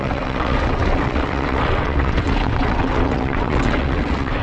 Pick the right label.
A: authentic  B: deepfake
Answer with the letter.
B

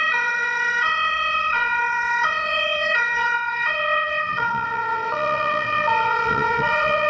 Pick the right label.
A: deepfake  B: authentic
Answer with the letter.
A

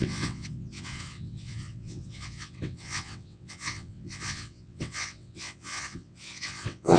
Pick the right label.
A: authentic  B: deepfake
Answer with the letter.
B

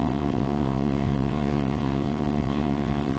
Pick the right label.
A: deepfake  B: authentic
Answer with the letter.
A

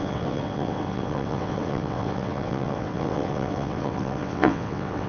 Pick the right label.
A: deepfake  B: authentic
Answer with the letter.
A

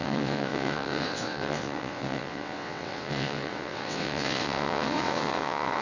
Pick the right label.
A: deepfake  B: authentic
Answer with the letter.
A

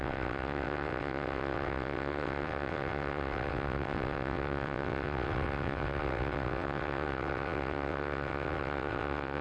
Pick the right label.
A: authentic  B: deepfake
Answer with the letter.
B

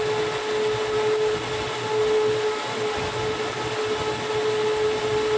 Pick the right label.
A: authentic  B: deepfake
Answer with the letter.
A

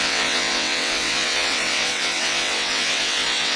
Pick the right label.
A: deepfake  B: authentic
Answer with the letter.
A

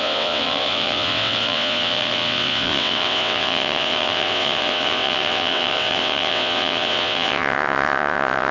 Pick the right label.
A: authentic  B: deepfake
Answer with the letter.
B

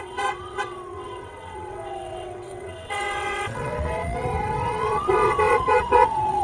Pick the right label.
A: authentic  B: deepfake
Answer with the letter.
B